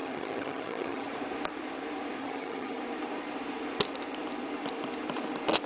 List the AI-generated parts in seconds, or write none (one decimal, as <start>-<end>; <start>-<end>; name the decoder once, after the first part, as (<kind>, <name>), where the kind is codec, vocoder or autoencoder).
0.0-1.1 (vocoder, HiFi-GAN); 2.2-2.8